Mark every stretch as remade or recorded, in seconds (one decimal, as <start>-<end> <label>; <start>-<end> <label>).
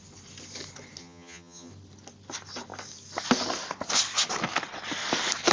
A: 0.0-1.0 recorded; 1.0-1.7 remade; 1.7-5.5 recorded